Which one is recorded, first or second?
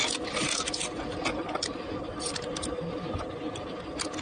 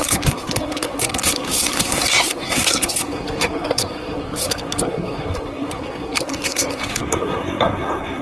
first